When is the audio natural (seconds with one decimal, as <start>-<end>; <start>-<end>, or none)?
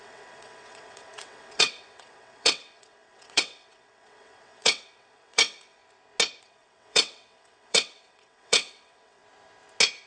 5.8-6.4; 9.2-10.1